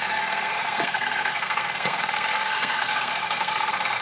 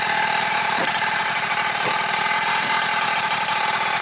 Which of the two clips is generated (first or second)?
first